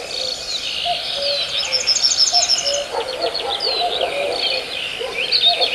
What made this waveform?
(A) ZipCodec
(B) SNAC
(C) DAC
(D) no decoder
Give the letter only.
D